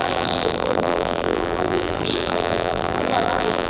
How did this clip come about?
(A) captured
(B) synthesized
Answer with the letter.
B